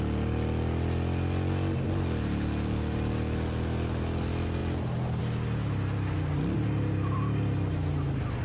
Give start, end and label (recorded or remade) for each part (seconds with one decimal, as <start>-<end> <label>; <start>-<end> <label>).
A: 0.0-8.4 recorded